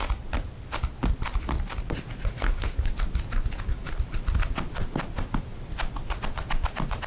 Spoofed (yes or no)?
no